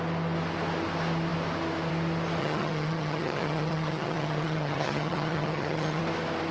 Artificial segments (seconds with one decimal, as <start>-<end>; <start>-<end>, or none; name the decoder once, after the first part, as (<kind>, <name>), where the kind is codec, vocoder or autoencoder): 2.4-6.0 (vocoder, HiFi-GAN)